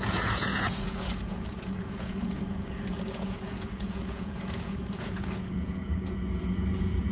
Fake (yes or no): yes